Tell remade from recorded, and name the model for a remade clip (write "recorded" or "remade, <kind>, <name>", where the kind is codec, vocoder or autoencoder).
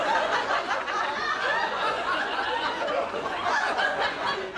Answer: remade, vocoder, Vocos